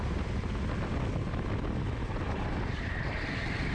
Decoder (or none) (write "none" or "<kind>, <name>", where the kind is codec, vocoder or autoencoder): none